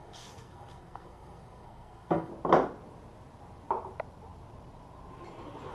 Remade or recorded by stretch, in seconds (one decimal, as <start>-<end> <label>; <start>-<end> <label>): 0.0-2.3 remade; 2.3-5.7 recorded